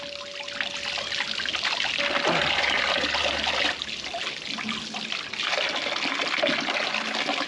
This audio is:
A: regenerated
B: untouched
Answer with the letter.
B